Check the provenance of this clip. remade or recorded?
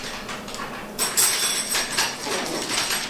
recorded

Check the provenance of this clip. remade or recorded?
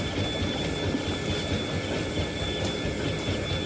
recorded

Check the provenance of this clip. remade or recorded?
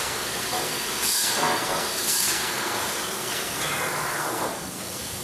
remade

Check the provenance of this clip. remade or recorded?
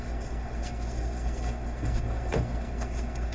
remade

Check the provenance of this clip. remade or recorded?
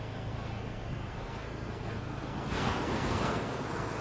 remade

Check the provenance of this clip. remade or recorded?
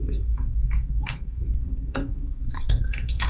remade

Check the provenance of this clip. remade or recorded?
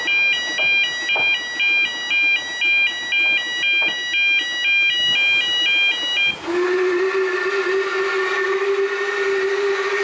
recorded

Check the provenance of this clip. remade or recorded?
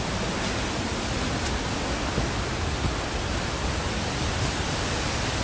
recorded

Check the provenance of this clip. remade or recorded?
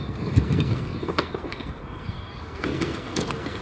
remade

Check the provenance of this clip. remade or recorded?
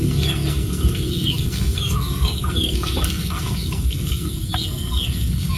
remade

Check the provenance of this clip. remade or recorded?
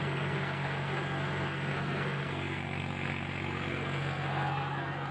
remade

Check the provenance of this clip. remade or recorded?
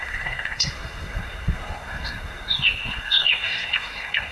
remade